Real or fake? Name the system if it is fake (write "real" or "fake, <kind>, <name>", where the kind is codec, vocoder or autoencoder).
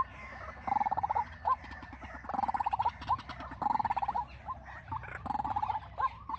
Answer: real